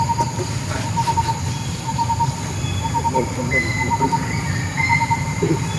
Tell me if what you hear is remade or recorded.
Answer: remade